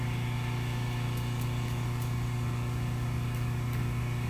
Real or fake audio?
fake